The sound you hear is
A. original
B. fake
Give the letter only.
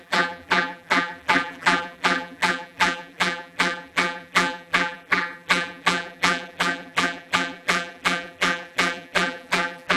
B